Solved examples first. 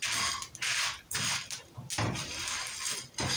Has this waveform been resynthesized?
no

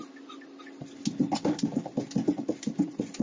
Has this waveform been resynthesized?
no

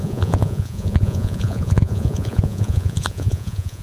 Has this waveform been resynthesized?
yes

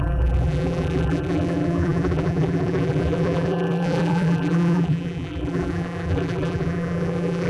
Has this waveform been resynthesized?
yes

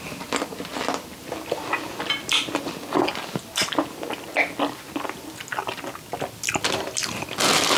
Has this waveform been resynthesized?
no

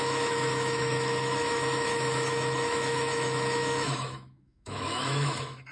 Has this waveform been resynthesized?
yes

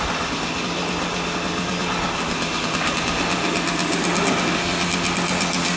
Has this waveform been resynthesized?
no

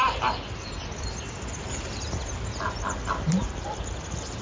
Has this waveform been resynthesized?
no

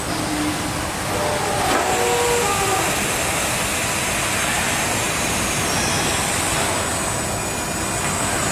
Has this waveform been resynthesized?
no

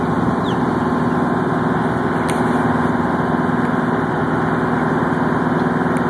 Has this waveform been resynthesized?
no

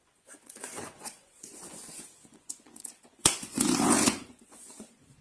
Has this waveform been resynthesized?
yes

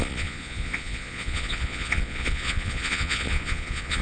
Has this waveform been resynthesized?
yes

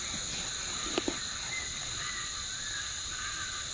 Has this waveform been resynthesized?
no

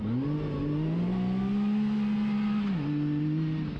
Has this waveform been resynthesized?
no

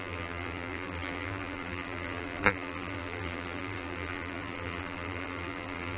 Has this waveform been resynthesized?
yes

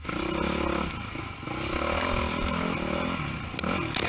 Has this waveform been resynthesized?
no